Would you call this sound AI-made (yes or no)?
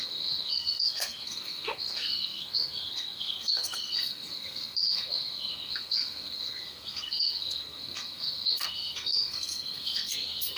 yes